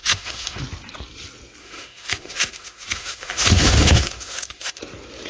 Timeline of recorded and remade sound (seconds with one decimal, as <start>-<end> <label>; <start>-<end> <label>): 0.0-0.6 remade; 0.6-1.6 recorded; 1.6-4.8 remade; 4.8-5.3 recorded